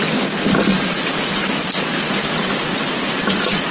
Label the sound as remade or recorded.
recorded